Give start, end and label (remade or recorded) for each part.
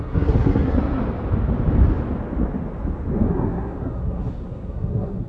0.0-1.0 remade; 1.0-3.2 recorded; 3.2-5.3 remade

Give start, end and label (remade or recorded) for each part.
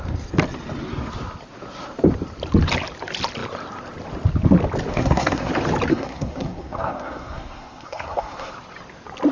0.0-4.9 recorded; 4.9-5.5 remade; 5.5-5.9 recorded; 5.9-8.5 remade; 8.5-9.3 recorded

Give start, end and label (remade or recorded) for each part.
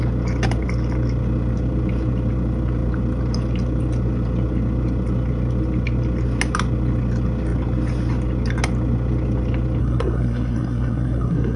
0.0-9.8 recorded; 9.8-11.6 remade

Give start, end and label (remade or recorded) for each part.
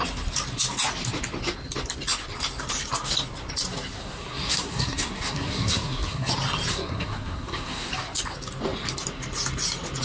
0.0-4.0 recorded; 4.0-6.3 remade; 6.3-6.7 recorded; 6.7-7.9 remade; 7.9-10.0 recorded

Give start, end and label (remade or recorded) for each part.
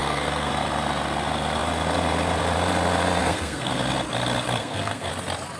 0.0-0.5 remade; 0.5-3.2 recorded; 3.2-3.7 remade; 3.7-4.6 recorded; 4.6-5.1 remade; 5.1-5.6 recorded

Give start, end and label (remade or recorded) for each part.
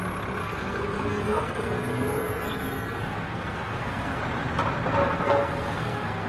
0.0-0.4 recorded; 0.4-4.2 remade; 4.2-5.0 recorded; 5.0-6.3 remade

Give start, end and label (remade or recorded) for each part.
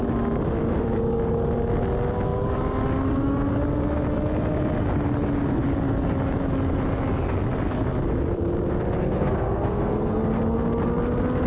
0.0-9.0 recorded; 9.0-10.2 remade; 10.2-11.5 recorded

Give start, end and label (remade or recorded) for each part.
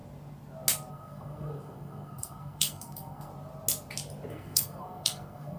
0.0-0.9 recorded; 0.9-3.3 remade; 3.3-4.3 recorded; 4.3-5.6 remade